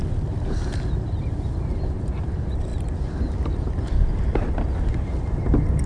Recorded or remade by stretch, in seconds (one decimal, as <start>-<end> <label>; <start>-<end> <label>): 0.0-5.9 recorded